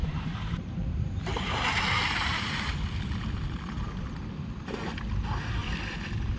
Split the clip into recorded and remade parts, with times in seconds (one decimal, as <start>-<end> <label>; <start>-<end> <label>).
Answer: 0.0-2.8 remade; 2.8-6.4 recorded